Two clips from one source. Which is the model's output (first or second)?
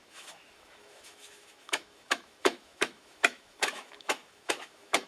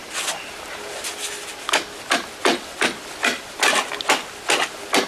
first